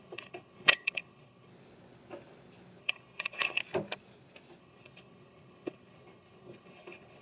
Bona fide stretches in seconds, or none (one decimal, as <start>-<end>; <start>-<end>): 1.5-2.8; 3.6-4.6